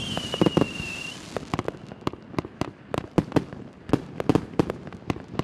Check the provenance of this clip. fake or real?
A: real